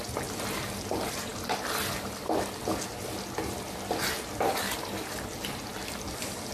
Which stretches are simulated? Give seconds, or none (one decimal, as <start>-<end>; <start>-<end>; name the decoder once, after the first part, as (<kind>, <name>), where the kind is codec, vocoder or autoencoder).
5.7-6.5 (vocoder, BigVGAN v2)